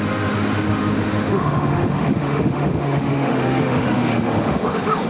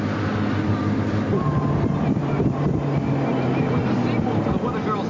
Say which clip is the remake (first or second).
first